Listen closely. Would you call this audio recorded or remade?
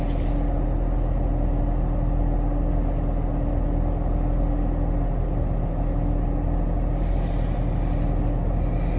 recorded